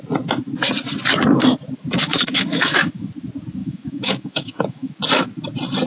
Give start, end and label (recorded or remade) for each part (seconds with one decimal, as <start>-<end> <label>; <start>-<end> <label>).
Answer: 0.0-2.1 recorded; 2.1-3.1 remade; 3.1-3.6 recorded; 3.6-4.9 remade; 4.9-5.9 recorded

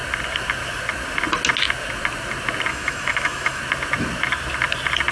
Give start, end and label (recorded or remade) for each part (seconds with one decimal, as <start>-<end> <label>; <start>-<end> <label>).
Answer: 0.0-2.7 recorded; 2.7-3.6 remade; 3.6-5.1 recorded

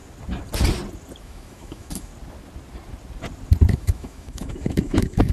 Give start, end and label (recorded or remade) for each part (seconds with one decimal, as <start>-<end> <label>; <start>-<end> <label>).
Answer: 0.0-1.2 recorded; 1.2-2.1 remade; 2.1-3.7 recorded; 3.7-5.3 remade

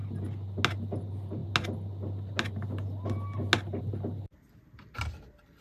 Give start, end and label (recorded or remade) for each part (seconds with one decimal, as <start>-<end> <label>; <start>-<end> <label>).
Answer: 0.0-5.6 recorded